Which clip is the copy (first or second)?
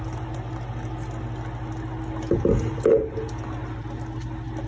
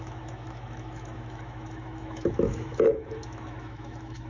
second